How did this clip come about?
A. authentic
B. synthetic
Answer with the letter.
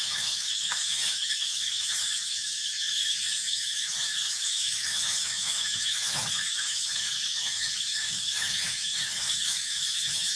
B